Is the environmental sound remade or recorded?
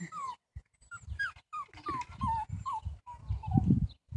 recorded